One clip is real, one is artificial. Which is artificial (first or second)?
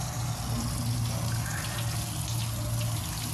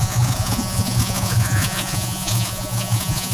second